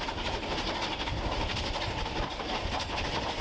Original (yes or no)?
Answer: yes